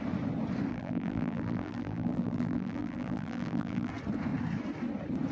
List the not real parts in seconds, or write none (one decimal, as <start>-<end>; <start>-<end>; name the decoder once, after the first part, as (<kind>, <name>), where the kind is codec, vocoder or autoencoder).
0.7-3.9 (vocoder, BigVGAN v2)